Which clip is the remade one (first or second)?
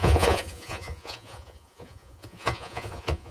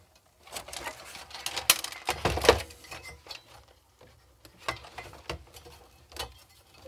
first